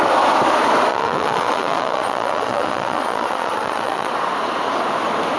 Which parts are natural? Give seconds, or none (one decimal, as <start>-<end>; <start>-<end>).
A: 0.0-0.9; 4.1-5.4